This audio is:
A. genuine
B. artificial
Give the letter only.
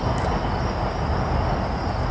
A